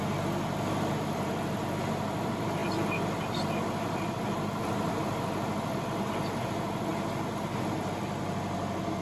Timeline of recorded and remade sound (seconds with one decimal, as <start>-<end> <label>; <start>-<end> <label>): 0.0-2.6 recorded; 2.6-6.1 remade; 6.1-9.0 recorded